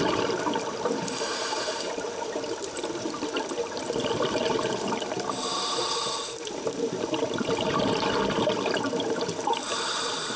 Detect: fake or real fake